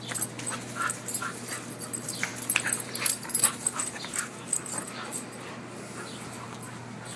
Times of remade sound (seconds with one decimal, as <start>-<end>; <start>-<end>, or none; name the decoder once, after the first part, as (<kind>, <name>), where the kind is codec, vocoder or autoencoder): none